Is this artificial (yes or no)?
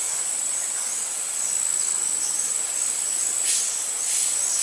no